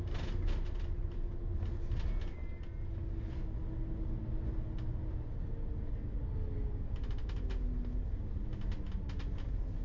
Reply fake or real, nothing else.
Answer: real